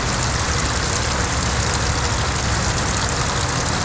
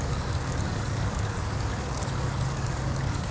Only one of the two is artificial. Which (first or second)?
second